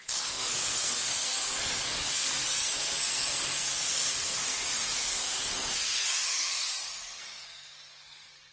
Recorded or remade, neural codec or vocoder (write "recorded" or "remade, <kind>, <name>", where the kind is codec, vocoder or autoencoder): remade, codec, SNAC